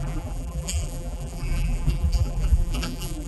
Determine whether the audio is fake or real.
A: fake